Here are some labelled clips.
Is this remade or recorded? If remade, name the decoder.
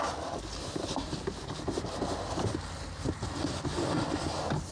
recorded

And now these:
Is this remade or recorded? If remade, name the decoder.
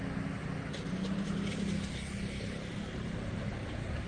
recorded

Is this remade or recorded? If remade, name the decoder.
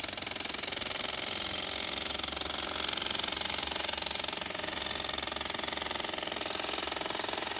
recorded